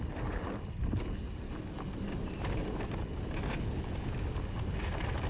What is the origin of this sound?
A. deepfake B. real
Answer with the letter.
B